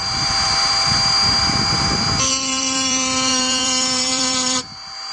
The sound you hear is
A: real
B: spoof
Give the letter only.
B